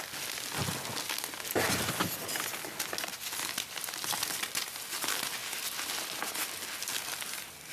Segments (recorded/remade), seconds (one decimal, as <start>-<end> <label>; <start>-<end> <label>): 0.0-7.7 recorded